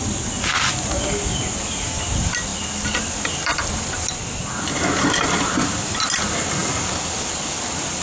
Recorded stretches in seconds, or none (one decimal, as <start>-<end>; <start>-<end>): 0.0-8.0